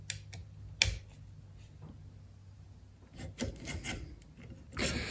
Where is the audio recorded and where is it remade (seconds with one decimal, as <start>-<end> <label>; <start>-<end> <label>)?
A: 0.0-5.1 recorded